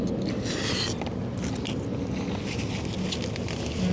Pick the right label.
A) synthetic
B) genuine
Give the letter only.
B